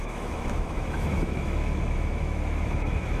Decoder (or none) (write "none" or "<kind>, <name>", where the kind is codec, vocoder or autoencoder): autoencoder, DAC-VAE